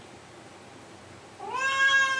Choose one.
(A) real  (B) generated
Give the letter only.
A